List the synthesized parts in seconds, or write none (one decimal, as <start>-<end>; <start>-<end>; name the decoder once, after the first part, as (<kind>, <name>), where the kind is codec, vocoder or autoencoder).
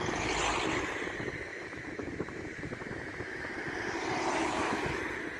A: 1.5-3.5 (autoencoder, DAC-VAE); 4.4-5.0